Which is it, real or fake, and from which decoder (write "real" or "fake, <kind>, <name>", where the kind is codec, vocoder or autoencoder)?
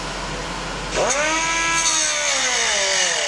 real